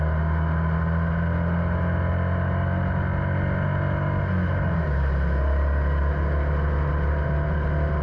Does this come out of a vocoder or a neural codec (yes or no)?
no